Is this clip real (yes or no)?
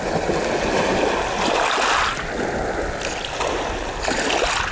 yes